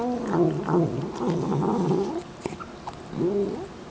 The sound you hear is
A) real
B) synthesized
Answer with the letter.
A